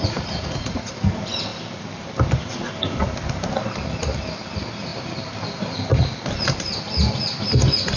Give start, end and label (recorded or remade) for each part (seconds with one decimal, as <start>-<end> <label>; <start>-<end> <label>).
0.0-0.9 remade; 0.9-8.0 recorded